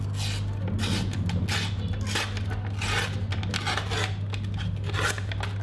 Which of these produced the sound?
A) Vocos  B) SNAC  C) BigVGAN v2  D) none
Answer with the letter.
D